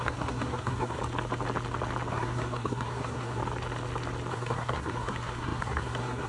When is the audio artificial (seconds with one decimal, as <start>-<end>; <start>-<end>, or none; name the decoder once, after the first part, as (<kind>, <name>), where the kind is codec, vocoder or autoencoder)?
0.0-1.0 (codec, SNAC); 2.1-3.4; 4.3-6.3